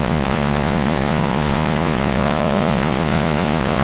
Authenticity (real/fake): fake